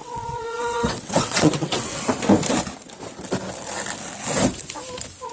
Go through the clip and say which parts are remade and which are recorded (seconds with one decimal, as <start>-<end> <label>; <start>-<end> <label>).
0.0-2.0 remade; 2.0-5.3 recorded